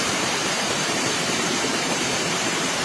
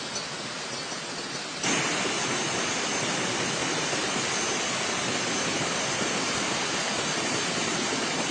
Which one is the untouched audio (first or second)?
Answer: second